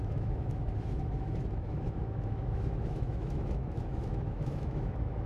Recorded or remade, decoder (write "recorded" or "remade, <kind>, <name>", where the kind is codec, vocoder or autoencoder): remade, autoencoder, DAC-VAE